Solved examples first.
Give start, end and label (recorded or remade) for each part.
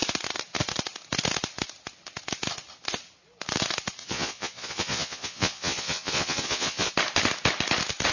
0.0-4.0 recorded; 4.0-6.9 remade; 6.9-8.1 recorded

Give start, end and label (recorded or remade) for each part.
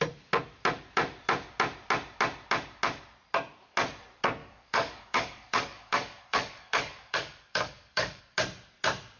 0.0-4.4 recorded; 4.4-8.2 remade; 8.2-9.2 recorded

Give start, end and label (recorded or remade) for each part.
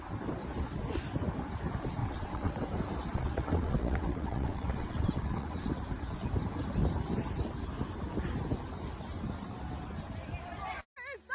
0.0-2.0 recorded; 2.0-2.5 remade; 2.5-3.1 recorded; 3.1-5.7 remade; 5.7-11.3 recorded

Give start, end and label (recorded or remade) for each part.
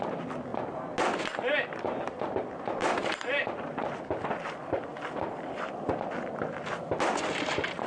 0.0-2.8 recorded; 2.8-3.9 remade; 3.9-7.9 recorded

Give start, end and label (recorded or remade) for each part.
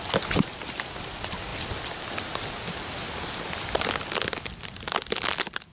0.0-5.7 recorded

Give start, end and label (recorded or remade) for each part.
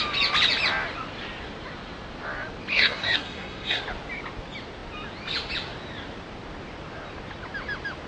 0.0-2.7 recorded; 2.7-3.8 remade; 3.8-8.1 recorded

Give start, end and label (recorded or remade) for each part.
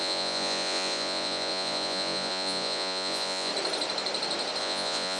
0.0-3.5 remade; 3.5-4.6 recorded; 4.6-5.2 remade